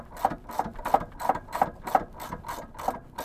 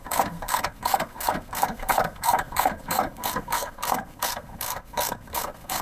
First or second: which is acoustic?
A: first